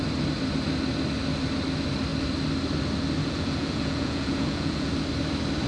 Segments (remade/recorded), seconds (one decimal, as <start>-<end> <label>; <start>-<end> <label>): 0.0-3.2 recorded; 3.2-4.9 remade; 4.9-5.7 recorded